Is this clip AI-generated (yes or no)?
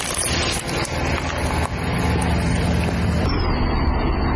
no